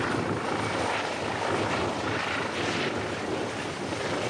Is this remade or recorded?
recorded